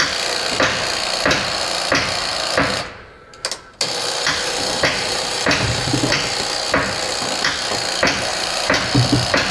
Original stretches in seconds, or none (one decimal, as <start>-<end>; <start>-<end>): 0.0-4.0; 6.0-8.3; 8.8-9.5